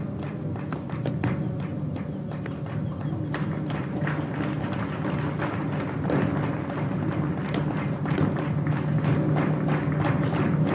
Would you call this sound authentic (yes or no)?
yes